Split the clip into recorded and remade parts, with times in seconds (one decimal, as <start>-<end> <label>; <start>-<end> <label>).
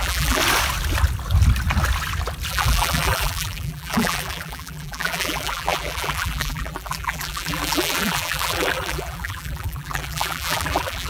0.0-0.4 remade; 0.4-2.5 recorded; 2.5-11.1 remade